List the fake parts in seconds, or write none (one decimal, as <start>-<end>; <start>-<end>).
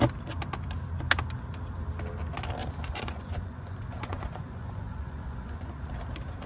2.6-5.9